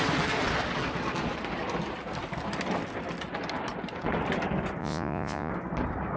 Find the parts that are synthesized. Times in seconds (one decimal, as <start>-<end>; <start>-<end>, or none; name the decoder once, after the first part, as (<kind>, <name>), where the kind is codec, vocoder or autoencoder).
4.8-5.5 (vocoder, Vocos)